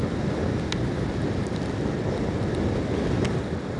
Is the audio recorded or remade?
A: recorded